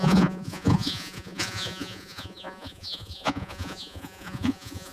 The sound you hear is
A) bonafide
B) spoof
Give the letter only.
B